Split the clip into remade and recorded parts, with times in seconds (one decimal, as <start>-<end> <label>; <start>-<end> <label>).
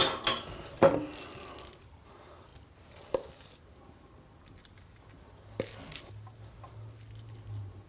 0.0-7.9 recorded